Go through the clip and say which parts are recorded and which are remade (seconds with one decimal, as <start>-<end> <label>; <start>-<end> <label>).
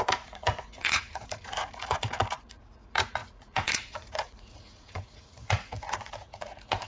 0.0-6.9 remade